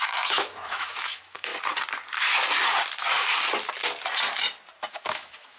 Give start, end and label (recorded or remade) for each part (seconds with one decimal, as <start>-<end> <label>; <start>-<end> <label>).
0.0-1.5 remade; 1.5-4.9 recorded; 4.9-5.6 remade